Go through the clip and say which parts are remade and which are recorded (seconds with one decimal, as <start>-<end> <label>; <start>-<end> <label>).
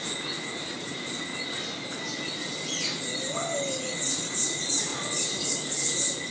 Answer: 0.0-1.3 remade; 1.3-3.8 recorded; 3.8-6.3 remade